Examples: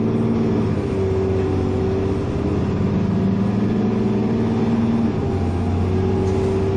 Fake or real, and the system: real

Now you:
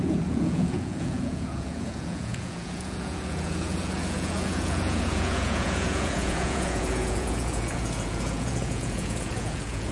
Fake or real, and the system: fake, vocoder, Vocos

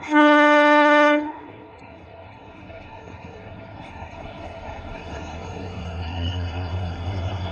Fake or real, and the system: fake, codec, SNAC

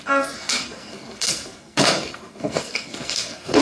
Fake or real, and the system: fake, codec, SNAC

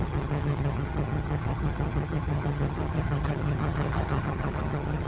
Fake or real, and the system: fake, vocoder, HiFi-GAN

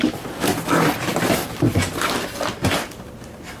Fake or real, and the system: real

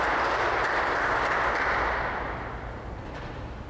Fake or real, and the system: real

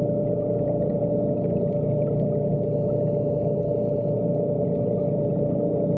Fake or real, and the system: real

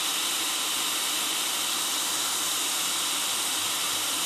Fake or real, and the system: real